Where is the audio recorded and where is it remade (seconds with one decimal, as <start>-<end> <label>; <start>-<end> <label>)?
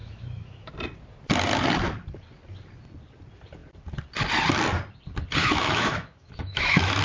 0.0-0.7 remade; 0.7-5.4 recorded; 5.4-7.0 remade